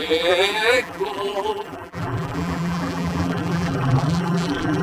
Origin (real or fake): fake